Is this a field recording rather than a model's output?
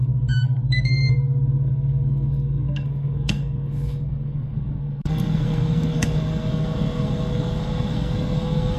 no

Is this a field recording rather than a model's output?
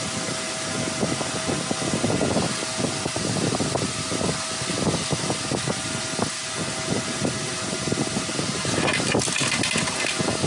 yes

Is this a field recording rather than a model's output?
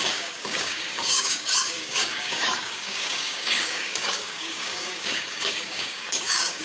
no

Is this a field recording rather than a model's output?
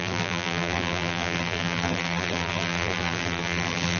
no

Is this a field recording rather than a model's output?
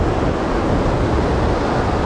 yes